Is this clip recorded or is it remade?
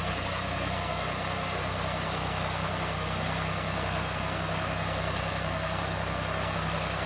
remade